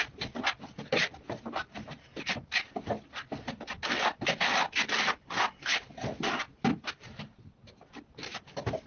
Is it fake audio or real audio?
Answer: real